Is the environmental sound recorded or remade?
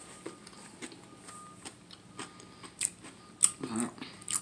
recorded